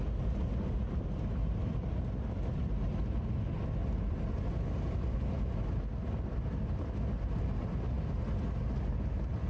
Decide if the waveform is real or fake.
real